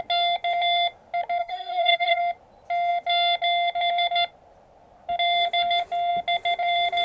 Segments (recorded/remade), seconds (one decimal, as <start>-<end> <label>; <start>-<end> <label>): 0.0-1.4 recorded; 1.4-2.2 remade; 2.2-7.0 recorded